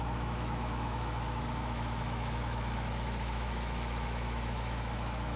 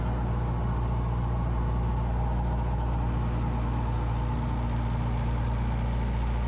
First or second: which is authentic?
second